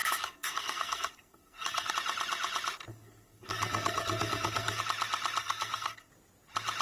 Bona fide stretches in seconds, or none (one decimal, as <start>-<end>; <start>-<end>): 1.9-2.9; 4.8-5.4; 6.1-6.8